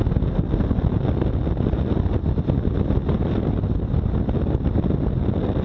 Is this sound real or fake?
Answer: real